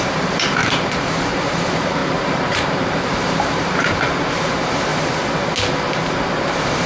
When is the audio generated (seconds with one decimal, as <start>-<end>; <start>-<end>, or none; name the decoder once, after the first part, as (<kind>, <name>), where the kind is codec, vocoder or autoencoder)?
0.0-4.9 (vocoder, BigVGAN v2); 6.4-6.9